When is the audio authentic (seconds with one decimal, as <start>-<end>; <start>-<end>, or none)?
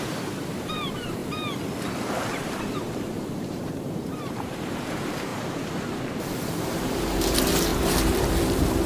1.2-2.2; 5.3-6.0